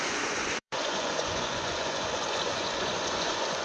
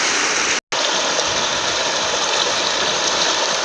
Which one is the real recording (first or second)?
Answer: second